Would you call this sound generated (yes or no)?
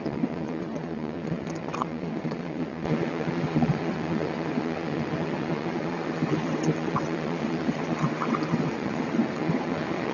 yes